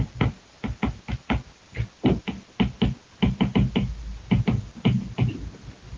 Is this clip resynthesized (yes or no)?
no